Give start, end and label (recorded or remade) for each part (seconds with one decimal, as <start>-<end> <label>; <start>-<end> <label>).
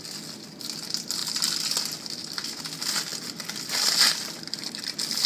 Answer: 0.0-1.2 recorded; 1.2-2.6 remade; 2.6-5.3 recorded